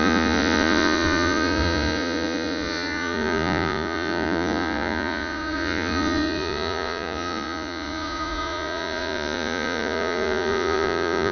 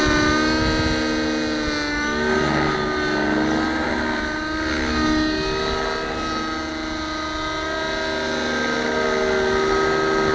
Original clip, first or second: second